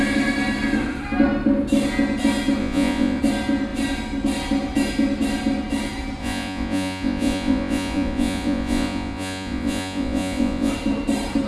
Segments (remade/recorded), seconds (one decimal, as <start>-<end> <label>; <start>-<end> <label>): 0.0-2.6 recorded; 2.6-3.2 remade; 3.2-6.2 recorded; 6.2-10.7 remade; 10.7-11.5 recorded

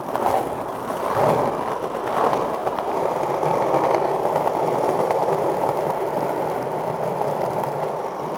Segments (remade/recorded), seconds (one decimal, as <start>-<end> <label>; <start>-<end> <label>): 0.0-2.6 recorded; 2.6-3.2 remade; 3.2-5.2 recorded; 5.2-5.9 remade; 5.9-8.4 recorded

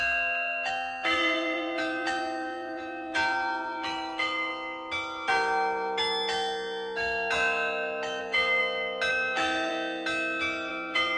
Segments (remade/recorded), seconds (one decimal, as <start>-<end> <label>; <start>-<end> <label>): 0.0-4.5 remade; 4.5-8.2 recorded; 8.2-8.6 remade; 8.6-9.1 recorded; 9.1-9.7 remade; 9.7-10.7 recorded; 10.7-11.2 remade